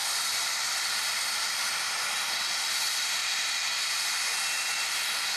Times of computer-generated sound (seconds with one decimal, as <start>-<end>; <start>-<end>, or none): 0.0-2.8; 3.2-3.8